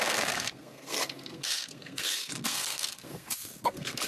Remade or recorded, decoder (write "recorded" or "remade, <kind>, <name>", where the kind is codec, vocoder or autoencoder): remade, codec, SNAC